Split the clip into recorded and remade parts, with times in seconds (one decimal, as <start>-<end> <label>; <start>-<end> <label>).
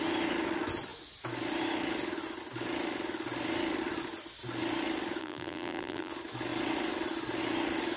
0.0-5.2 recorded; 5.2-6.1 remade; 6.1-8.0 recorded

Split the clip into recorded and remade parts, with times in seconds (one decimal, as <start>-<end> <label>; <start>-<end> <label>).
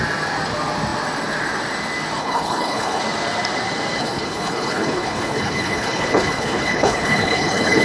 0.0-2.2 recorded; 2.2-3.0 remade; 3.0-4.0 recorded; 4.0-7.8 remade